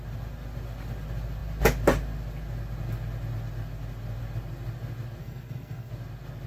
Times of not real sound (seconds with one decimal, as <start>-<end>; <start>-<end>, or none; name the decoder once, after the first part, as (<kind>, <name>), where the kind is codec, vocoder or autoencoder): 5.2-5.9 (codec, SNAC)